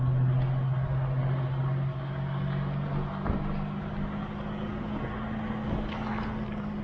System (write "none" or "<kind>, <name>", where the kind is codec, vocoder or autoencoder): none